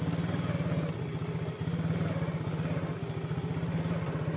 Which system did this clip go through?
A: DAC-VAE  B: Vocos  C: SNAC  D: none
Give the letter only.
D